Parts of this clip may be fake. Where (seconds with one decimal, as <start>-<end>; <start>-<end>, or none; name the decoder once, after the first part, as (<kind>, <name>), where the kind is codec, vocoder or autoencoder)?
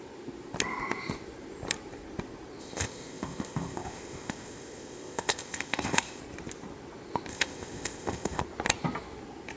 2.6-6.2 (codec, ZipCodec); 7.3-8.4